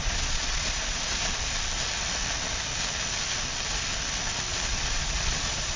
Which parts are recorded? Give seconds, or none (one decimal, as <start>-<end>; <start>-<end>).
1.2-4.7